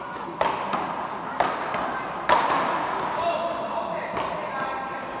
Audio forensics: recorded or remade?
recorded